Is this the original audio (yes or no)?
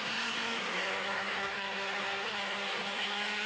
no